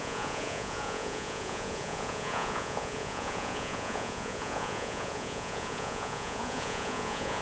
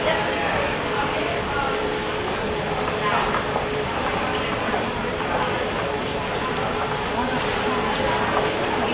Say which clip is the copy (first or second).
first